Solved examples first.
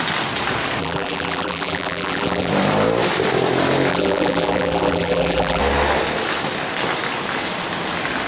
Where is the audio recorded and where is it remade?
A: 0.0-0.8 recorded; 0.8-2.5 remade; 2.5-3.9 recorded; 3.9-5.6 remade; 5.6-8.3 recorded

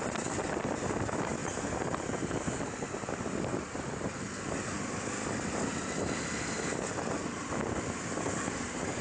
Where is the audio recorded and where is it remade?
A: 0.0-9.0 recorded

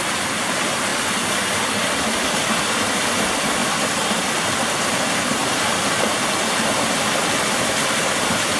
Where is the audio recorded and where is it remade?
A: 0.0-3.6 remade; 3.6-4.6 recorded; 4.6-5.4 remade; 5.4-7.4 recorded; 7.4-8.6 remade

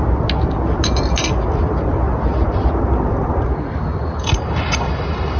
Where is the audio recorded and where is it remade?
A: 0.0-1.9 recorded; 1.9-5.4 remade

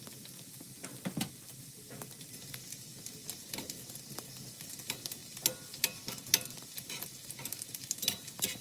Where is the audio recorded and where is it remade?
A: 0.0-8.6 recorded

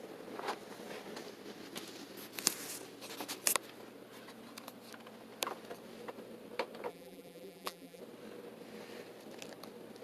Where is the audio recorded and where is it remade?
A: 0.0-6.9 recorded; 6.9-8.0 remade; 8.0-10.0 recorded

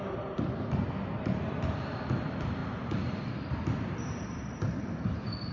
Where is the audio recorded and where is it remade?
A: 0.0-2.6 remade; 2.6-3.3 recorded; 3.3-5.5 remade

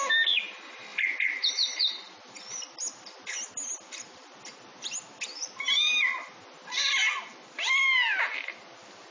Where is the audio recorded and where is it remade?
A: 0.0-0.9 recorded; 0.9-2.3 remade; 2.3-3.6 recorded; 3.6-4.2 remade; 4.2-9.1 recorded